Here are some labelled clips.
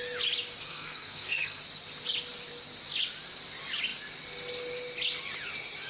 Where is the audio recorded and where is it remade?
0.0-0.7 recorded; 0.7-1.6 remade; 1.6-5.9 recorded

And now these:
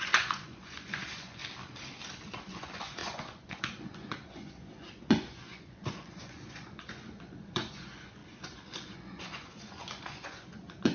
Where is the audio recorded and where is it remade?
0.0-1.4 remade; 1.4-2.5 recorded; 2.5-10.9 remade

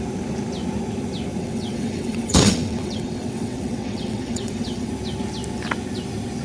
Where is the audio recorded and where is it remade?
0.0-1.4 recorded; 1.4-4.9 remade; 4.9-6.4 recorded

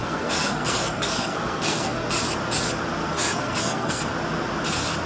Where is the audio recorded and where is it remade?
0.0-2.2 remade; 2.2-3.0 recorded; 3.0-4.0 remade; 4.0-5.1 recorded

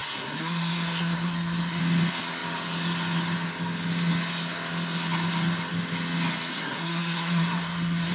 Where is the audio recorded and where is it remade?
0.0-1.8 remade; 1.8-6.5 recorded; 6.5-8.1 remade